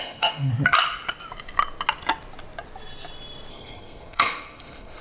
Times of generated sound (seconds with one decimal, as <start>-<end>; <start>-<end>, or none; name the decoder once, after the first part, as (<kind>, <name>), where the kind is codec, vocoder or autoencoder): 0.0-0.5 (codec, SNAC); 3.5-5.0